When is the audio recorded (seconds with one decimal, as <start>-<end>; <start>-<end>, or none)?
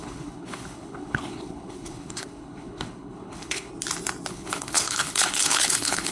3.7-4.3